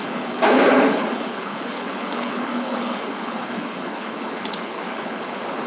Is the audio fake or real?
fake